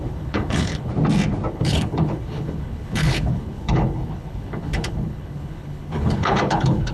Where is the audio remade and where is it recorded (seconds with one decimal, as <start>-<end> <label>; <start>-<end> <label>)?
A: 0.0-0.9 remade; 0.9-1.5 recorded; 1.5-6.9 remade